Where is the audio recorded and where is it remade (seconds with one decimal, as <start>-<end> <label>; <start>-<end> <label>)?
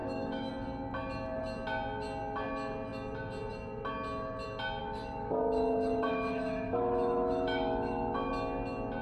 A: 0.0-0.5 remade; 0.5-4.8 recorded; 4.8-8.3 remade; 8.3-9.0 recorded